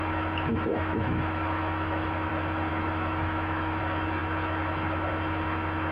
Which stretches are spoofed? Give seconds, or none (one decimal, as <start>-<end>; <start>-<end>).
0.5-2.3; 2.7-3.8